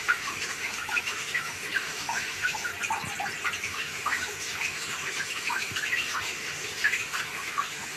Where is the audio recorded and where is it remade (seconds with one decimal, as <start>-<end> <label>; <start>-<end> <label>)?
0.0-2.7 remade; 2.7-3.6 recorded; 3.6-8.0 remade